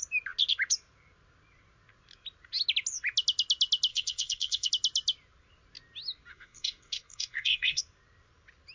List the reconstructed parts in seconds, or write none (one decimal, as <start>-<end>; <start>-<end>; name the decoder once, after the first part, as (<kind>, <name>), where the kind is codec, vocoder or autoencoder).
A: 3.9-4.7 (codec, SNAC); 6.3-7.8